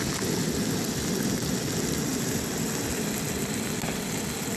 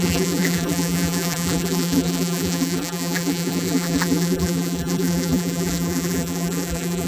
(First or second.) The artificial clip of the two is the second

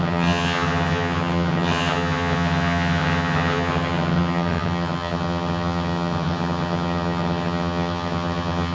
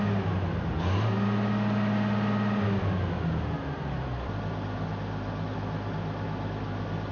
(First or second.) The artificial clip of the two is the first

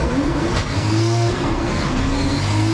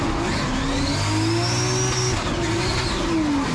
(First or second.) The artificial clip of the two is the first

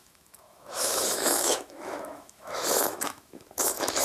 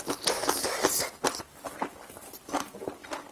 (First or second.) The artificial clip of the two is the first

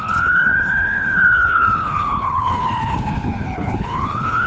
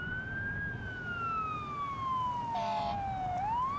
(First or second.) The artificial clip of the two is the first